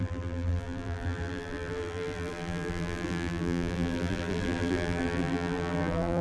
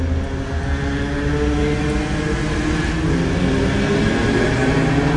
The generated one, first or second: first